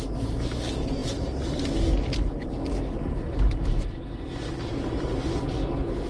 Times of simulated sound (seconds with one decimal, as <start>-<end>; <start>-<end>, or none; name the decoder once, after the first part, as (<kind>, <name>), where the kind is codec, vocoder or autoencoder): none